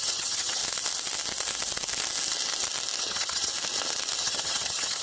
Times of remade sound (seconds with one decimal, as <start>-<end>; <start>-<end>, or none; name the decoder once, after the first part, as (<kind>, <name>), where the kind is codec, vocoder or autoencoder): 0.0-0.6 (vocoder, HiFi-GAN); 3.0-3.5; 4.2-5.0